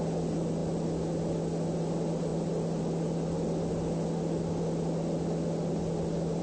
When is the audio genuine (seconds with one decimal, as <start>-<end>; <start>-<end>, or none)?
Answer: 0.0-6.4